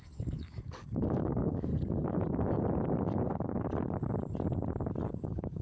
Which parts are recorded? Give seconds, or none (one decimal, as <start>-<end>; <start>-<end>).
1.7-5.1